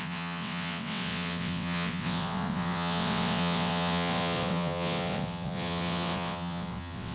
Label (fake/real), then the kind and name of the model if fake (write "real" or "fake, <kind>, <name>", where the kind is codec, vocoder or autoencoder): fake, vocoder, WaveNeXt